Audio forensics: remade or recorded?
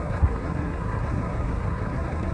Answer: remade